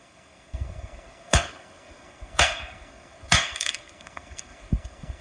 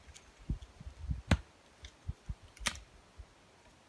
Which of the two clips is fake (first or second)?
first